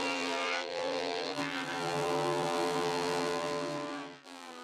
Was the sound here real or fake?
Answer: fake